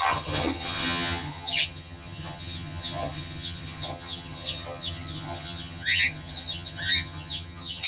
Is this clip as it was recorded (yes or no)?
no